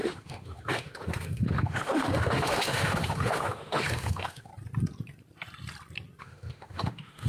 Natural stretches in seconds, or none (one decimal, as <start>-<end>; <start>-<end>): 4.5-6.2